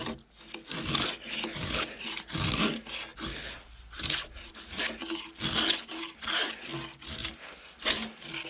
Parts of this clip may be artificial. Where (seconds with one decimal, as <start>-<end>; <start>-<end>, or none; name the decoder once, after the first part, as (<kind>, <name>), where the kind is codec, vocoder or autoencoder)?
none